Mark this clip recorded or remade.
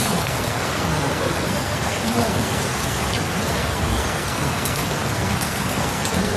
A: remade